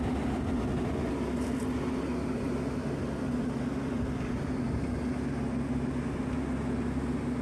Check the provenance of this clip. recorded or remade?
recorded